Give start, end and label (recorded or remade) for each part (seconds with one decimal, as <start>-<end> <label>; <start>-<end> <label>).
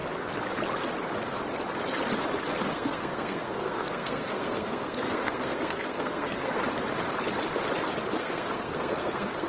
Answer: 0.0-2.7 recorded; 2.7-6.6 remade; 6.6-8.2 recorded; 8.2-9.5 remade